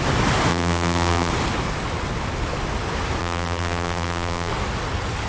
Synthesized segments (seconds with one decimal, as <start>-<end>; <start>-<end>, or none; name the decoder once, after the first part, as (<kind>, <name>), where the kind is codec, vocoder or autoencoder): 0.5-1.3 (vocoder, BigVGAN v2); 3.2-4.5